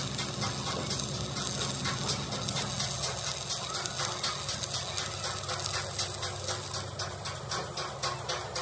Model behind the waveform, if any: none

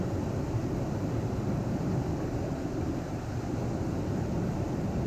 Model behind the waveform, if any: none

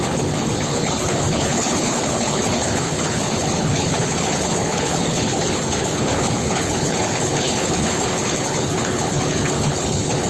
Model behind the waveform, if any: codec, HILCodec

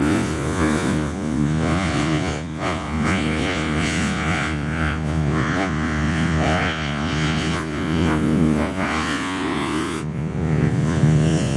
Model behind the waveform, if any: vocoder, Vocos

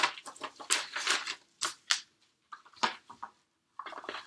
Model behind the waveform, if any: none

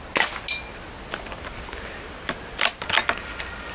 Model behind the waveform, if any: none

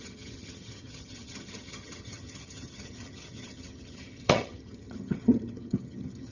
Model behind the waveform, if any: vocoder, HiFi-GAN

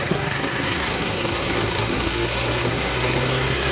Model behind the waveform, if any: codec, SNAC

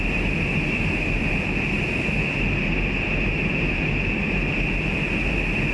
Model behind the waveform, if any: none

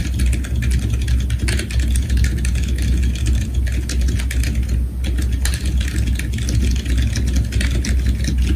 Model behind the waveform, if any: none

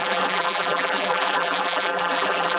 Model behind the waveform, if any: vocoder, BigVGAN v2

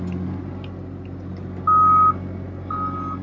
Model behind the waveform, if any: none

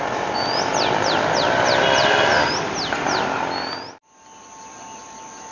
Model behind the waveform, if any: none